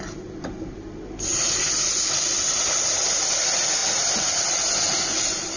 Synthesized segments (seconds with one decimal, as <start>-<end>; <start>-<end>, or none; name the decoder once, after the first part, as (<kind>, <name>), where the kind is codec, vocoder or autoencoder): none

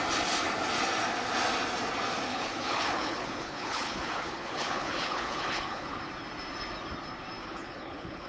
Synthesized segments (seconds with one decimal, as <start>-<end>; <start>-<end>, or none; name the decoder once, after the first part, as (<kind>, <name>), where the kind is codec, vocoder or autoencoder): 2.3-6.0 (codec, HILCodec); 7.4-8.3

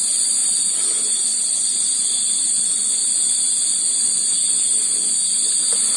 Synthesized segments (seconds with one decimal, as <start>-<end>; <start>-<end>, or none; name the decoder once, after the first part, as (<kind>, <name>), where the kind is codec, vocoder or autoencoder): none

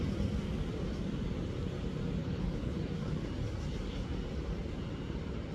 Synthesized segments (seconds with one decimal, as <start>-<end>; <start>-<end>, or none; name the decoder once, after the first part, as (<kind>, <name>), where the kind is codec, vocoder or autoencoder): 2.2-2.8 (codec, HILCodec)

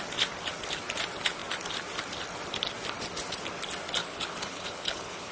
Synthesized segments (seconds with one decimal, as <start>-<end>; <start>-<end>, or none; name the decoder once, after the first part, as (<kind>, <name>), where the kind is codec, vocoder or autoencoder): 4.0-5.3 (codec, HILCodec)

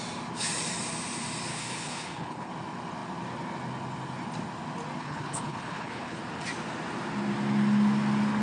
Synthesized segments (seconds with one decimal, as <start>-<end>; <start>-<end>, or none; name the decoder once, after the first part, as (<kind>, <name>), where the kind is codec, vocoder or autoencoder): 1.5-2.5 (codec, HILCodec); 5.0-6.2

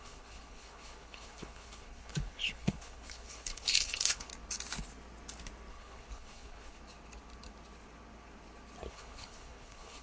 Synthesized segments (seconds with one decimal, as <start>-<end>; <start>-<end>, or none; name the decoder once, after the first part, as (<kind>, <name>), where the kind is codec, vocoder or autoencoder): 0.0-4.3 (codec, HILCodec); 5.7-6.8; 8.9-10.0